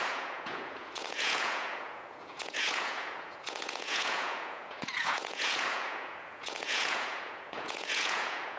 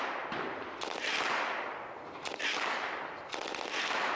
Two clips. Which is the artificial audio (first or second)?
first